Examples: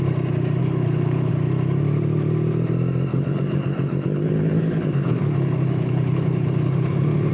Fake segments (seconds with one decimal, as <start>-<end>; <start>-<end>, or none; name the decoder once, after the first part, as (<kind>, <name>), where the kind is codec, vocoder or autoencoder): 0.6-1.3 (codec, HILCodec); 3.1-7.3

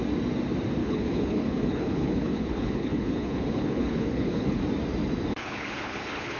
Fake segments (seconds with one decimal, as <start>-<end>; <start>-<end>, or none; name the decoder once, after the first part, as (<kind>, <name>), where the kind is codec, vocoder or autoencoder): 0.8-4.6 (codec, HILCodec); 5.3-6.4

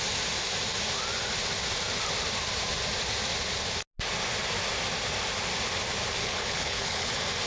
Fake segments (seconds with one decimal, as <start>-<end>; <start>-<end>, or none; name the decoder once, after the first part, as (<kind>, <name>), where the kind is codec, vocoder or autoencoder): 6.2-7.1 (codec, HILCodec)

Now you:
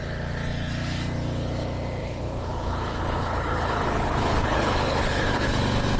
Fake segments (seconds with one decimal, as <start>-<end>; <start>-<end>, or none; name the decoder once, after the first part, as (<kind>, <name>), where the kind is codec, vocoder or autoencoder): 2.0-5.6 (codec, HILCodec)